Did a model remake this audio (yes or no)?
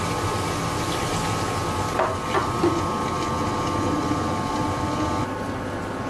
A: no